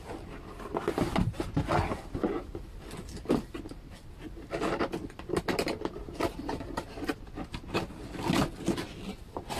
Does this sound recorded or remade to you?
recorded